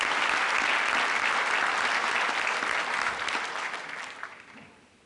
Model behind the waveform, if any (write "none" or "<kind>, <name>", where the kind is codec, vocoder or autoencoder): none